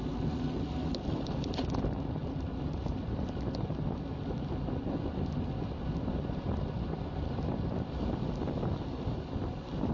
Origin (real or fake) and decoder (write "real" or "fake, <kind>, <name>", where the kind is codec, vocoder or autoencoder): real